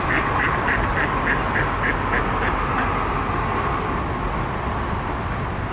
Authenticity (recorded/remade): recorded